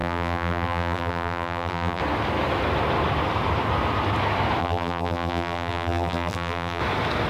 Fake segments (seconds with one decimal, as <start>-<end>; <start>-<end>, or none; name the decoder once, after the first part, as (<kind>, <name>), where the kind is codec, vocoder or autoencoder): 0.0-2.0 (vocoder, BigVGAN v2); 4.6-6.8